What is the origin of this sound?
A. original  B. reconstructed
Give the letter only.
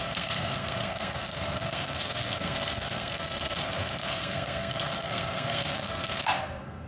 B